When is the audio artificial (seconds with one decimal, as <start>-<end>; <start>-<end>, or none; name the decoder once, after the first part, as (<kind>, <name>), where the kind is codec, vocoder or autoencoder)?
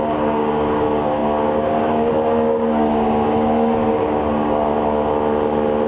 0.0-4.7 (codec, DAC)